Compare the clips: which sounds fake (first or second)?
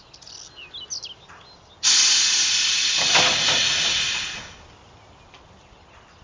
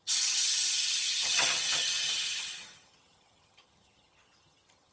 second